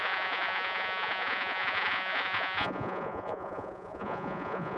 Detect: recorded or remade remade